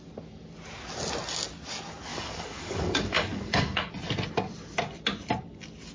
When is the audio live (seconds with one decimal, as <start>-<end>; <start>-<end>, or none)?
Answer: 0.0-2.1; 3.9-5.9